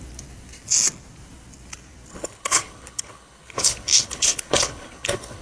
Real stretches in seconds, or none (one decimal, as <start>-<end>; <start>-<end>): 0.0-2.1